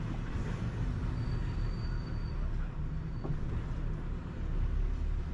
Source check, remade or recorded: recorded